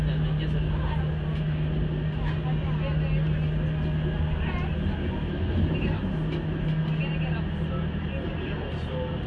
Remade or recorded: recorded